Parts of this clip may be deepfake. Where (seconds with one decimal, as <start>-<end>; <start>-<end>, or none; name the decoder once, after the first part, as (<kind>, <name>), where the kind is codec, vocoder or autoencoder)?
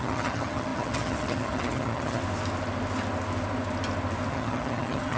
0.0-2.2 (vocoder, HiFi-GAN); 4.3-5.2